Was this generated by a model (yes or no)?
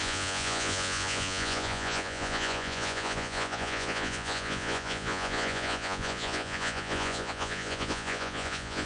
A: yes